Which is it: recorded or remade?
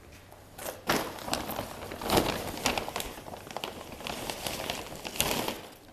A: recorded